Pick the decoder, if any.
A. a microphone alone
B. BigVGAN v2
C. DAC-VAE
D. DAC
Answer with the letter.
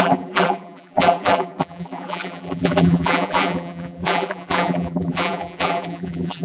B